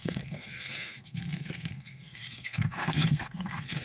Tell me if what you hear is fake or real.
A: fake